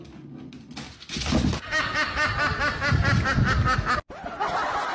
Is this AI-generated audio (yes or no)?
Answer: no